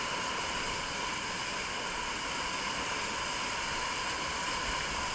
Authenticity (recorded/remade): recorded